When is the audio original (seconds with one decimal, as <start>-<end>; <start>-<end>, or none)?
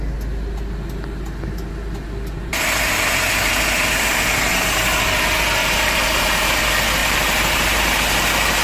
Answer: 0.0-5.6; 6.6-7.0; 7.8-8.6